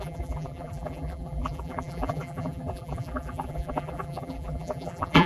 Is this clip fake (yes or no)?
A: yes